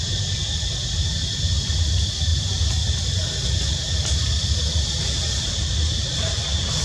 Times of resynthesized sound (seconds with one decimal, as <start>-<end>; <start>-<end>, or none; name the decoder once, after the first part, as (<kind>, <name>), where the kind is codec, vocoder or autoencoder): 0.0-6.8 (vocoder, BigVGAN v2)